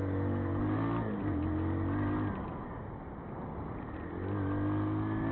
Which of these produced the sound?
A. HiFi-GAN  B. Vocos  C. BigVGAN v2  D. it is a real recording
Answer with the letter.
D